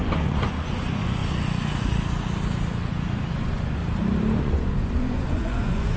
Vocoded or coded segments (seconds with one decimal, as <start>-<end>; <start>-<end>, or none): 0.0-1.2; 3.3-3.8; 4.4-6.0